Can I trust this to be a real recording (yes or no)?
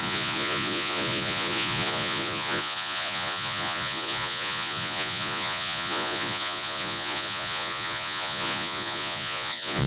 no